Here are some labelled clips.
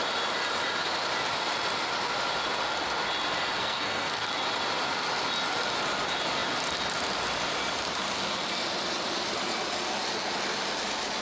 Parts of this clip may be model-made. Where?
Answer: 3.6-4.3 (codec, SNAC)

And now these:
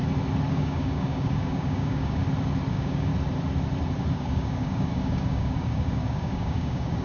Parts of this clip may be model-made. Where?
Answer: 0.5-2.2 (codec, DAC); 2.7-3.1; 4.1-7.0

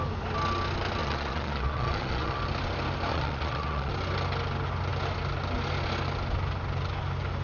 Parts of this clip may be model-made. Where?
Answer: 1.0-2.4 (vocoder, Vocos); 3.1-3.9

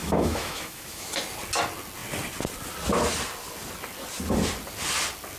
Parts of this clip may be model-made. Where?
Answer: 0.0-1.1 (autoencoder, DAC-VAE)

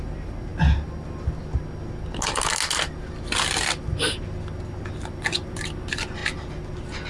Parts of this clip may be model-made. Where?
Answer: 0.0-0.5 (vocoder, BigVGAN v2); 4.8-6.2